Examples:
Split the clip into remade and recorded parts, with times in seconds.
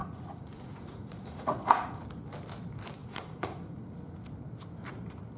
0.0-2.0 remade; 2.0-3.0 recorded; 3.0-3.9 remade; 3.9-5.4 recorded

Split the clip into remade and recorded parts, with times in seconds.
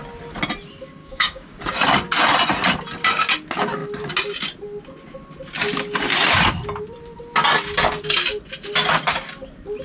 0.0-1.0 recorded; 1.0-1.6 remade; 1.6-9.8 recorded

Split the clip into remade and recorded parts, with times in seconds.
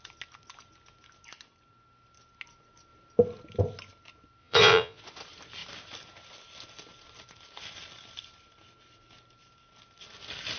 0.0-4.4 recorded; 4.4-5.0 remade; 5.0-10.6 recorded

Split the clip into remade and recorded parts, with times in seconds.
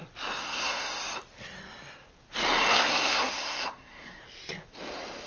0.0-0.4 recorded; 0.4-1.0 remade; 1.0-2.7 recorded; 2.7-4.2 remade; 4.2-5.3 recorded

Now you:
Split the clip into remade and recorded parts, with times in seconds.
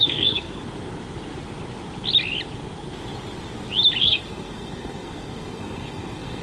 0.0-0.6 remade; 0.6-4.0 recorded; 4.0-6.4 remade